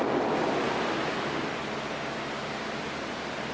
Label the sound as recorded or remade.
recorded